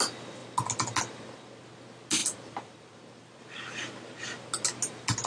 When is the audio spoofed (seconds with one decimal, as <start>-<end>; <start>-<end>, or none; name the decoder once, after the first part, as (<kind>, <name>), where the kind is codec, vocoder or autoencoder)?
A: 2.2-3.4 (vocoder, BigVGAN v2)